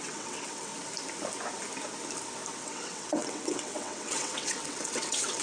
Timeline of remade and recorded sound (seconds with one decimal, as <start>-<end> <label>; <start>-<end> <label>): 0.0-0.7 remade; 0.7-2.6 recorded; 2.6-5.4 remade